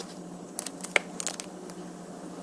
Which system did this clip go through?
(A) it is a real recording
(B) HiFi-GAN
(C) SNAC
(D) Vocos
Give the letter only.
A